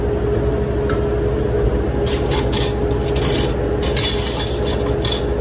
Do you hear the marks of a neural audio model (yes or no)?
no